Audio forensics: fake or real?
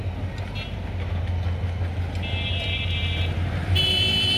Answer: real